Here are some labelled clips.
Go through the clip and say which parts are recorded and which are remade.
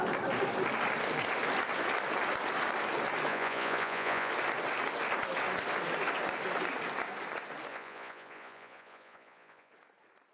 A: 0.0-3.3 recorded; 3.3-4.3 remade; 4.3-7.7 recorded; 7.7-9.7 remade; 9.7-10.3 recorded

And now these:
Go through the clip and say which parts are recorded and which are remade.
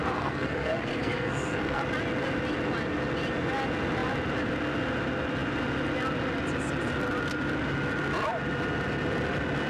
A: 0.0-1.8 remade; 1.8-9.7 recorded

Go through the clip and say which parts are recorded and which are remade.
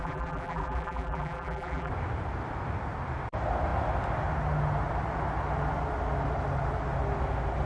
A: 0.0-1.9 remade; 1.9-7.7 recorded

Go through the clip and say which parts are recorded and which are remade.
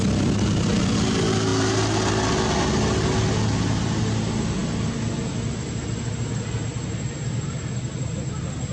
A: 0.0-8.7 recorded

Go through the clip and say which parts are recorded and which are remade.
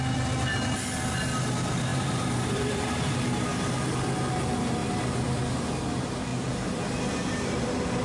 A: 0.0-1.9 recorded; 1.9-3.7 remade; 3.7-4.8 recorded; 4.8-5.4 remade; 5.4-8.0 recorded